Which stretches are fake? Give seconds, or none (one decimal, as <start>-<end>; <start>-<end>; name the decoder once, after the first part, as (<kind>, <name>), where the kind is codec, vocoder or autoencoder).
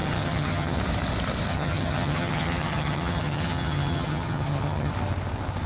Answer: 0.0-0.8 (vocoder, HiFi-GAN); 1.5-4.9